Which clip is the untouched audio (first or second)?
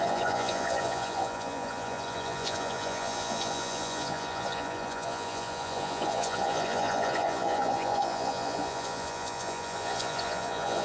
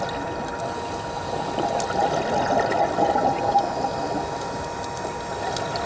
second